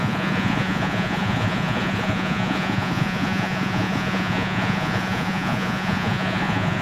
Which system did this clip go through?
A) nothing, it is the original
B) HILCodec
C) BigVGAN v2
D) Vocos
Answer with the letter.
D